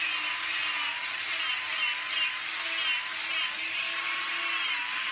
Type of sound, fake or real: real